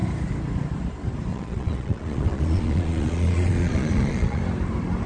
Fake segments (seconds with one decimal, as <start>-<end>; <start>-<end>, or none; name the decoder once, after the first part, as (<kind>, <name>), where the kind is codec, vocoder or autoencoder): 1.3-4.4 (vocoder, Vocos)